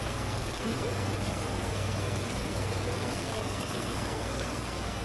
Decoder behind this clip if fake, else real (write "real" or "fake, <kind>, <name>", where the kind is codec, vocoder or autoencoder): fake, codec, SNAC